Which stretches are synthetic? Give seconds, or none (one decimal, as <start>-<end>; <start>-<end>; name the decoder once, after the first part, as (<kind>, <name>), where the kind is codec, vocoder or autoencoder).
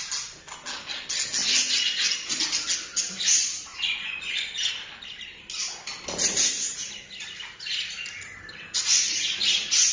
3.7-4.7 (vocoder, Vocos)